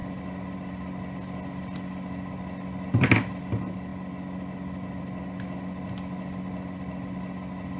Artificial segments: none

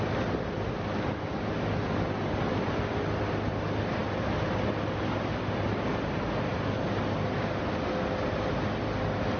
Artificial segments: none